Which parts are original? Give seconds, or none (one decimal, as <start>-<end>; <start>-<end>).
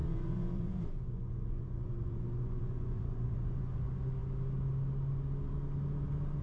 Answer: 3.8-6.4